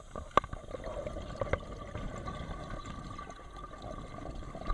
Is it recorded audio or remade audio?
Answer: recorded